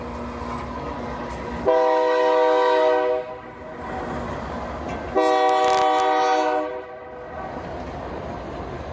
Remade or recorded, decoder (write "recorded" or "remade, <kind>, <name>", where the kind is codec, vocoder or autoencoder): recorded